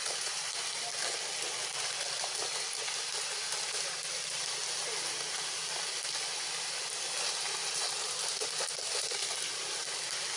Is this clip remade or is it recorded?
recorded